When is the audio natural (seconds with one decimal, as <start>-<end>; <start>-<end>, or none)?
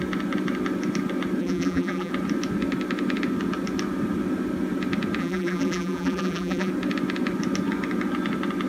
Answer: 0.0-1.4; 2.1-5.2; 6.7-8.7